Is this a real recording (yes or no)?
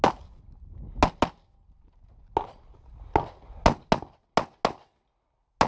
yes